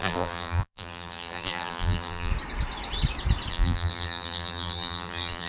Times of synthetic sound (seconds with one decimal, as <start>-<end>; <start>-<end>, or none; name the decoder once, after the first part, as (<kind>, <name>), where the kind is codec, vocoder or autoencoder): 0.0-2.3 (vocoder, BigVGAN v2); 3.5-5.5